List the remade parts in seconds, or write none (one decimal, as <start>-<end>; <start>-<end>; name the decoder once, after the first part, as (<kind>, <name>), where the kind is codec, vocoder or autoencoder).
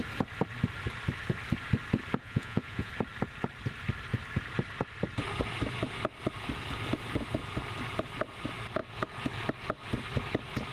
2.2-2.9 (vocoder, Vocos)